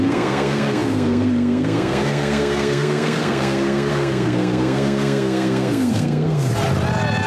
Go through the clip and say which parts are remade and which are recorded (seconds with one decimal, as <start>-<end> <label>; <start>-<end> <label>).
0.0-6.5 remade; 6.5-7.3 recorded